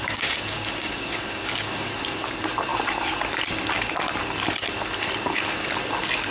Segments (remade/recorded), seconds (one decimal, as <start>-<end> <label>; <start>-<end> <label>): 0.0-1.9 remade; 1.9-6.3 recorded